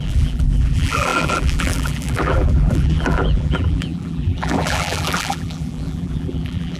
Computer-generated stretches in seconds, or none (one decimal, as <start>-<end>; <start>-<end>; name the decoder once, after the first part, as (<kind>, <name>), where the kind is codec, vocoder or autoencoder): 0.0-6.8 (vocoder, BigVGAN v2)